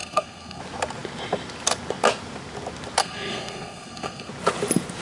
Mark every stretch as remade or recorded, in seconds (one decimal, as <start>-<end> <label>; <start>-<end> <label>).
0.0-0.6 remade; 0.6-3.0 recorded; 3.0-4.3 remade; 4.3-5.0 recorded